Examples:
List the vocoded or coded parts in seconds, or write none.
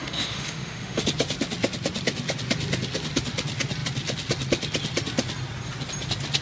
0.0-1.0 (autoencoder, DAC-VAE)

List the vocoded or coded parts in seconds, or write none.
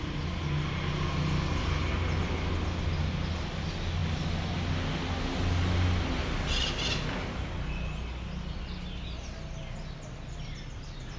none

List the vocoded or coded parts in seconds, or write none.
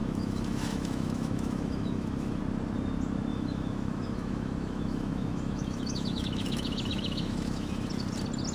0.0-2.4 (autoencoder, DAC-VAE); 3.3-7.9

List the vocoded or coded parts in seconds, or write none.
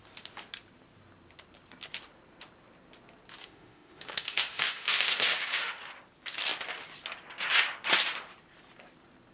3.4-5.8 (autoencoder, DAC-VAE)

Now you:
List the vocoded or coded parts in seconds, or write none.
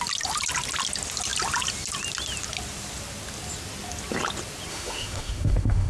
4.7-5.9 (autoencoder, DAC-VAE)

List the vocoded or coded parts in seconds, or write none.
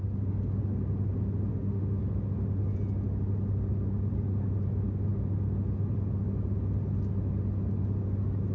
1.5-2.0 (autoencoder, DAC-VAE)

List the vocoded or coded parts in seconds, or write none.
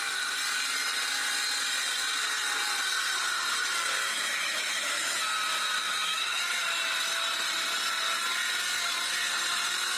4.1-5.2 (autoencoder, DAC-VAE); 5.8-6.4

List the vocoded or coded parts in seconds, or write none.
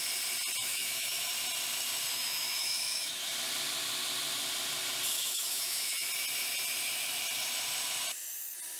0.6-1.3 (autoencoder, DAC-VAE); 2.1-3.3; 5.1-6.1